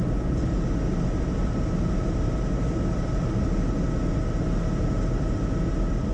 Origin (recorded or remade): recorded